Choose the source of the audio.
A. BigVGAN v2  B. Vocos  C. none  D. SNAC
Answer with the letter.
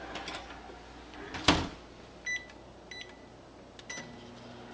C